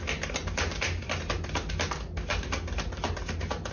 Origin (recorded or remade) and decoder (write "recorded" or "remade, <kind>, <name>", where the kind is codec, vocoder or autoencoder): recorded